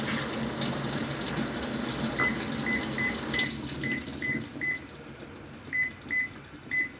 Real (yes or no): yes